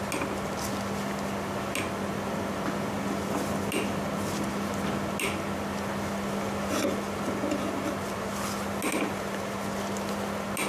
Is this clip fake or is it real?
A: real